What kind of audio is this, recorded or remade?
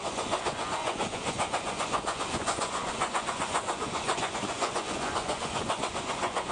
remade